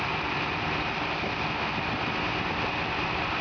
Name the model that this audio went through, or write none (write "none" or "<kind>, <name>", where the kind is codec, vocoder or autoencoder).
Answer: none